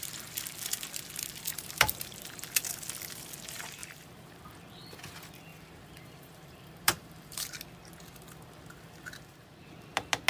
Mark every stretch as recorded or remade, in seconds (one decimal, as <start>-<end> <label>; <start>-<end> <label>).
0.0-1.5 recorded; 1.5-2.2 remade; 2.2-3.8 recorded; 3.8-4.4 remade; 4.4-5.5 recorded; 5.5-7.6 remade; 7.6-10.3 recorded